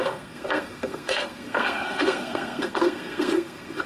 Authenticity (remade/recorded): remade